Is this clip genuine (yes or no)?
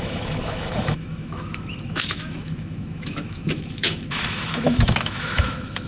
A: no